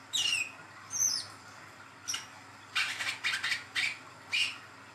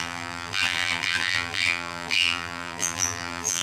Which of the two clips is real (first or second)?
first